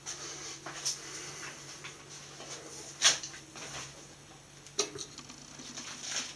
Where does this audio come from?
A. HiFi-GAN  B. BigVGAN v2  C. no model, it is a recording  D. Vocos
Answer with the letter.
C